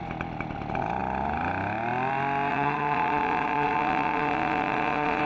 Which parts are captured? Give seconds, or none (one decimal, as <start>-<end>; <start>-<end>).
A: 0.0-2.5